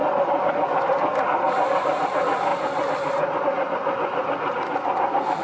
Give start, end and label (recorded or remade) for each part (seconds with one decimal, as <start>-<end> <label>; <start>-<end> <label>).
0.0-5.4 recorded